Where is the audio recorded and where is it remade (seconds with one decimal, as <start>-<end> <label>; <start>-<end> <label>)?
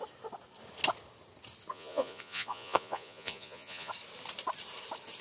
0.0-1.7 recorded; 1.7-3.9 remade; 3.9-5.2 recorded